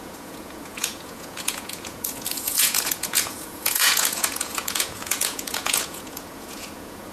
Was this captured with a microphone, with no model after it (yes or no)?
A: no